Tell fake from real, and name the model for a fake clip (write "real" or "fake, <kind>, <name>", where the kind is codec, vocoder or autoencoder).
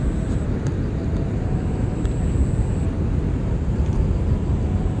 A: real